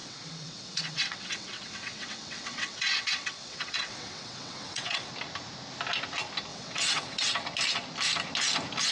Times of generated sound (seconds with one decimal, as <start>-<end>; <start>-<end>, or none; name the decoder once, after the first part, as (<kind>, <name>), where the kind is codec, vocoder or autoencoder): 0.0-5.1 (vocoder, WaveNeXt); 6.5-7.3